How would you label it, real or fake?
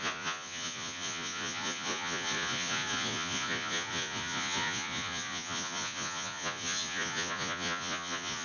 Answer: fake